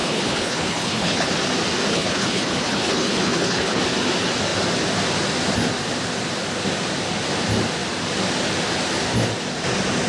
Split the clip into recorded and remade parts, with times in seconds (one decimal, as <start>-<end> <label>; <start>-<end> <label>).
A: 0.0-1.3 remade; 1.3-1.9 recorded; 1.9-3.8 remade; 3.8-10.1 recorded